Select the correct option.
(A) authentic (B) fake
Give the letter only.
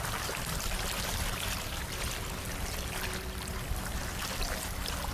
B